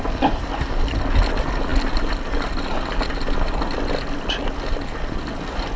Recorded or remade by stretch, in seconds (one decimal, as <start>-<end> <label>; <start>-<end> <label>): 0.0-5.8 recorded